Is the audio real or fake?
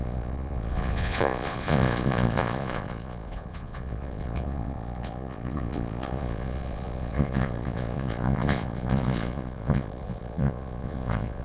fake